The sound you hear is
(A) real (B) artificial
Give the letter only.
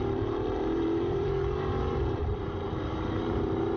B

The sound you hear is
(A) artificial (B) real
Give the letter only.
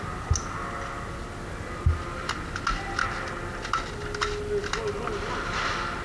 B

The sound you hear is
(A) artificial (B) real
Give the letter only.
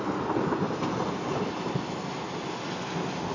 B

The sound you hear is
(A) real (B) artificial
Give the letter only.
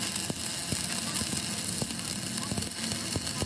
A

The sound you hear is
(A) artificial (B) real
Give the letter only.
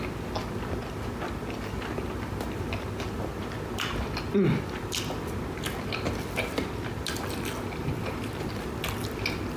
B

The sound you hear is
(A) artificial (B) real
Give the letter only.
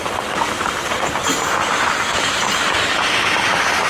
A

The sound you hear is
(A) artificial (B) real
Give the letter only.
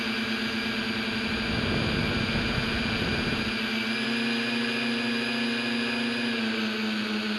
B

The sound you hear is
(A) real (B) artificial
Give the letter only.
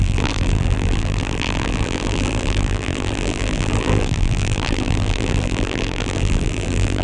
B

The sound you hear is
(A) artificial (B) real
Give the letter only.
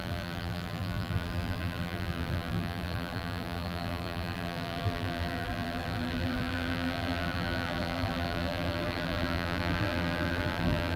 A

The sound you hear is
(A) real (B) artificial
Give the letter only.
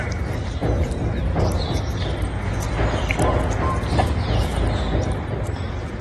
A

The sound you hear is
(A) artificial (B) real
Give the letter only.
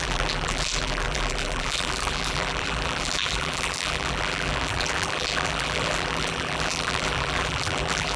A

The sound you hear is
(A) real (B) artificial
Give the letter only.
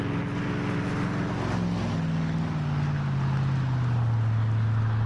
A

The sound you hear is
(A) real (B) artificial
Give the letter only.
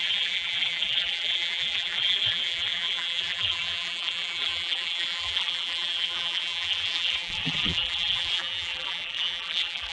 B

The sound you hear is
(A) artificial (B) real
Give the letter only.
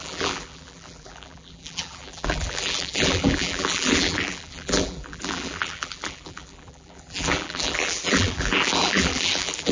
A